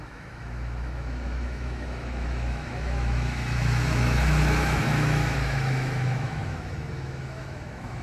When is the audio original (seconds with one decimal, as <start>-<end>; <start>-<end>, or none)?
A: none